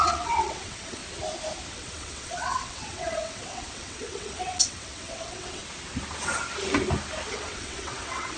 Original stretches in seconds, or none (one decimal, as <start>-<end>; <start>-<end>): 1.0-1.7; 5.6-7.3